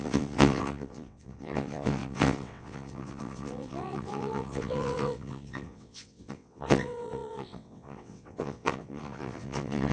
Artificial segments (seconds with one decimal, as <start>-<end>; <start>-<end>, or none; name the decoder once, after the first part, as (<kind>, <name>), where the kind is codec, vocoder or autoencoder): 0.0-9.9 (vocoder, WaveNeXt)